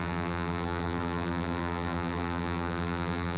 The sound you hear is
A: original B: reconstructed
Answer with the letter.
B